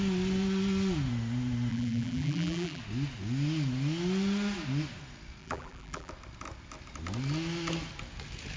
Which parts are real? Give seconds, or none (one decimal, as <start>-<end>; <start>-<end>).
0.0-1.7; 2.8-5.4; 6.1-8.6